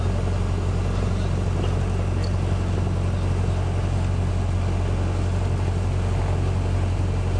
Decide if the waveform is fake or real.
real